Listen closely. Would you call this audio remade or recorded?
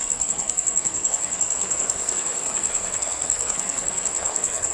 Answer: remade